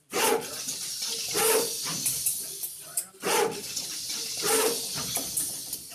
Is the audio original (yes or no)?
no